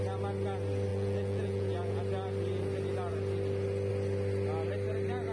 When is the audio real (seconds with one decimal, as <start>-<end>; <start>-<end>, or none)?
0.0-0.9; 2.0-5.3